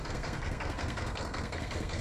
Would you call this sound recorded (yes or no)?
no